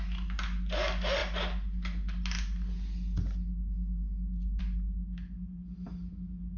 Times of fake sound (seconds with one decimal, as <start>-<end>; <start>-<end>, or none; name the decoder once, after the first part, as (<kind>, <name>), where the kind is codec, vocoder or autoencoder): none